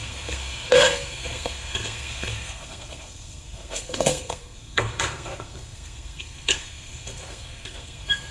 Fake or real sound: fake